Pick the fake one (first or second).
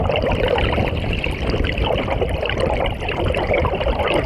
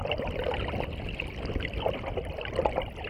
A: first